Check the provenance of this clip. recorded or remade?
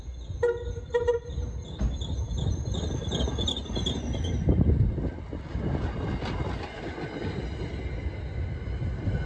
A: recorded